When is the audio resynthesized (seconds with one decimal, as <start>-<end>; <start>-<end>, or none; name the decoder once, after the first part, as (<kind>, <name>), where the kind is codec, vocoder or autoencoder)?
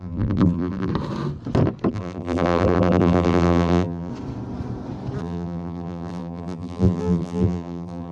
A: 0.0-0.9 (vocoder, BigVGAN v2); 1.9-4.1; 5.2-8.1